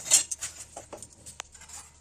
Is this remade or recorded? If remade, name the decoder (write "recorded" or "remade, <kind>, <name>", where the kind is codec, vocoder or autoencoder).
recorded